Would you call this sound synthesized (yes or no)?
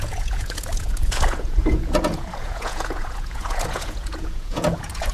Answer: yes